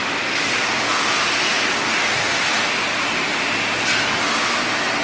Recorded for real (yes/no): yes